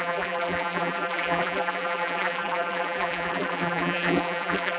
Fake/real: fake